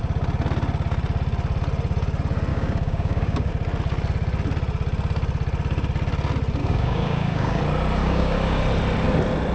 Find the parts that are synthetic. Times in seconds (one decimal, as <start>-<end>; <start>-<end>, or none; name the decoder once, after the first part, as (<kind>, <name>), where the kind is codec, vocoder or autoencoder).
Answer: 2.5-3.5 (codec, DAC); 6.6-7.6; 8.0-8.6